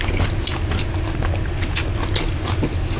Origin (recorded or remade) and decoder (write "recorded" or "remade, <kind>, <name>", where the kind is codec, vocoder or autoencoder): recorded